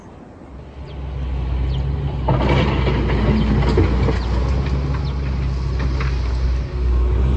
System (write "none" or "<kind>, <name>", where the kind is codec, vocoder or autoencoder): none